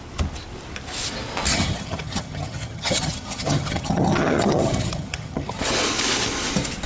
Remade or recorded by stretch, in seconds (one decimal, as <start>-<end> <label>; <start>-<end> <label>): 0.0-1.5 recorded; 1.5-5.6 remade; 5.6-6.9 recorded